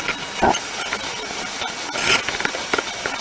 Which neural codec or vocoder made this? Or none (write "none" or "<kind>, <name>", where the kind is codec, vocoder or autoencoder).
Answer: none